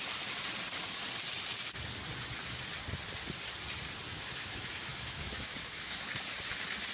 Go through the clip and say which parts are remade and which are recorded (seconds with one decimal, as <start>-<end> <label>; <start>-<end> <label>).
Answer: 0.0-4.1 recorded; 4.1-6.1 remade; 6.1-6.9 recorded